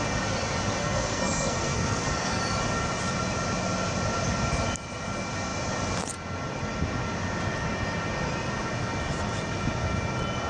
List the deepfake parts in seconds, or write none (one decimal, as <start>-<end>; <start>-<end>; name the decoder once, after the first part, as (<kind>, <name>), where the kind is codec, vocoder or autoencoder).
0.8-2.4 (codec, SNAC)